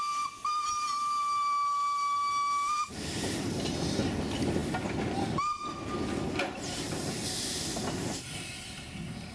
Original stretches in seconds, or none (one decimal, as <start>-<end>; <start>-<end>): 0.0-9.3